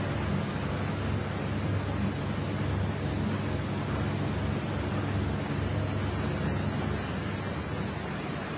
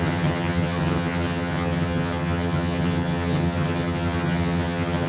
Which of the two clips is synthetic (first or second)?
second